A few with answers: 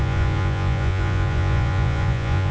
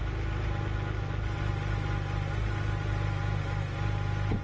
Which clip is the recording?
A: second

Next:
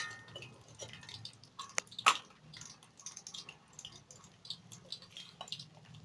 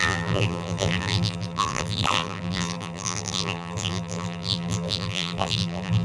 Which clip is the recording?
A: first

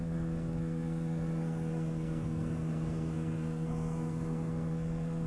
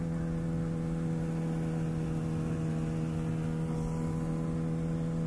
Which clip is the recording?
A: second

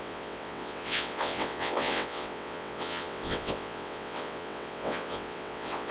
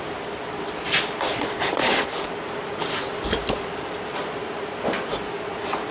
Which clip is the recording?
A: second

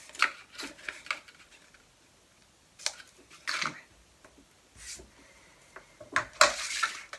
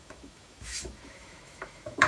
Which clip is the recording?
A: first